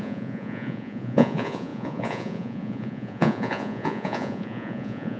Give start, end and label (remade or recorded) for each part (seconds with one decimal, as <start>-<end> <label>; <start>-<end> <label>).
0.0-5.2 remade

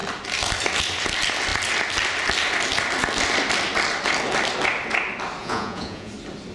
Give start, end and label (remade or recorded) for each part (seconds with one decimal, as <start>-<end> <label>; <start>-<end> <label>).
0.0-5.4 recorded; 5.4-6.1 remade; 6.1-6.5 recorded

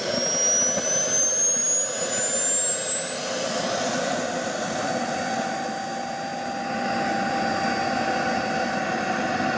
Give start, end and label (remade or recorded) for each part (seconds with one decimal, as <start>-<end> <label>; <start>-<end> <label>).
0.0-9.6 recorded

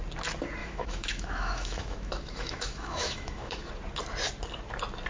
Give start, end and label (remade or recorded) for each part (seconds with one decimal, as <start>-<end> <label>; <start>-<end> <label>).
0.0-0.6 recorded; 0.6-3.7 remade; 3.7-5.1 recorded

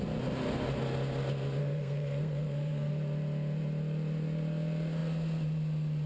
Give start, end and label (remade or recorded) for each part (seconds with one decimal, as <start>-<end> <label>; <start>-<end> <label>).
0.0-1.6 recorded; 1.6-2.9 remade; 2.9-6.1 recorded

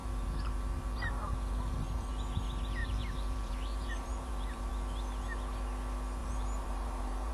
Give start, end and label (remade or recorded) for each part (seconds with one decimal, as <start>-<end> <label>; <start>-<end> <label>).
0.0-2.1 remade; 2.1-2.8 recorded; 2.8-4.7 remade; 4.7-6.2 recorded; 6.2-7.3 remade